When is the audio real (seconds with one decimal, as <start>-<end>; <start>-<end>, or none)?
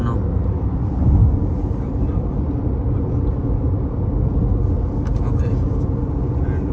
0.0-6.7